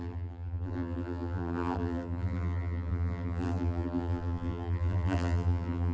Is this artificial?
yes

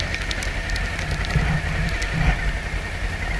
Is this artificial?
no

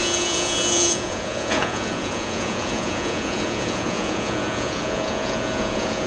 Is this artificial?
yes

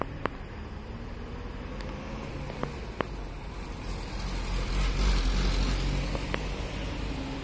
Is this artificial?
no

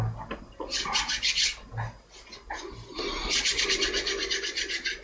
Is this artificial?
no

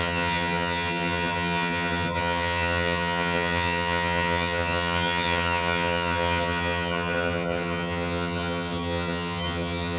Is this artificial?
yes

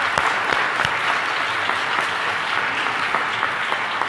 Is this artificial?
no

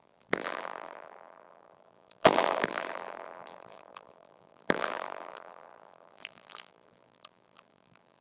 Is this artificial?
yes